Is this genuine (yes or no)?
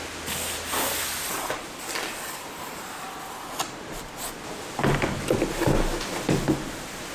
yes